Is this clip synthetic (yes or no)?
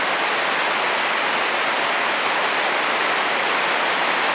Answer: no